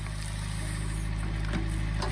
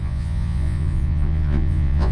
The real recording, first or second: first